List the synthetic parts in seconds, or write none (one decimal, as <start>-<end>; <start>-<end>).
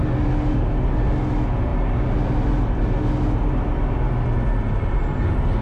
none